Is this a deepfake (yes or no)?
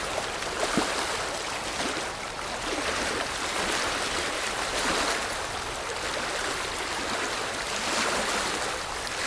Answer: no